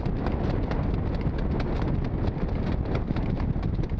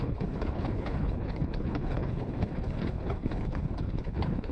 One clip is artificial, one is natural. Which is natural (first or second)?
first